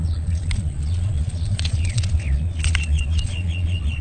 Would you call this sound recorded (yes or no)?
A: no